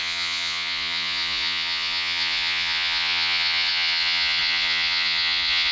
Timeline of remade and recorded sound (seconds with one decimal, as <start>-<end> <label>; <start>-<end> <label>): 0.0-5.7 remade